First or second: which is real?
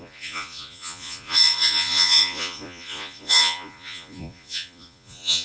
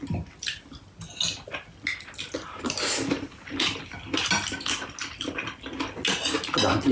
second